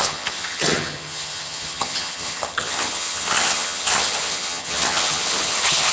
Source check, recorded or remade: remade